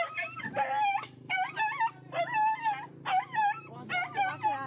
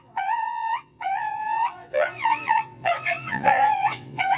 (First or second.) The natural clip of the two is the first